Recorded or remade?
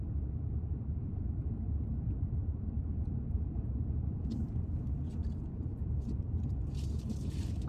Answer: remade